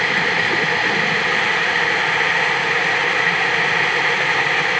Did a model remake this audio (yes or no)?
no